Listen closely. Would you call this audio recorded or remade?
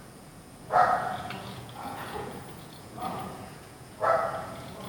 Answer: remade